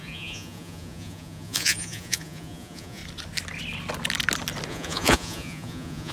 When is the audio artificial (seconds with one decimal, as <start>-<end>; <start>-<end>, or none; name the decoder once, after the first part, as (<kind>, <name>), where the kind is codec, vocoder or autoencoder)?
0.0-3.0 (vocoder, Vocos); 4.7-6.1